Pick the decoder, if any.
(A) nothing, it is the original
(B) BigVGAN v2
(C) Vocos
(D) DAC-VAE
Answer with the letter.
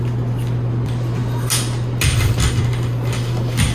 A